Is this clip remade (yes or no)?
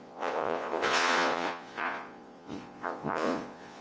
yes